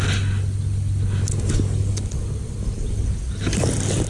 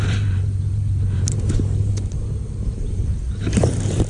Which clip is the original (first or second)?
first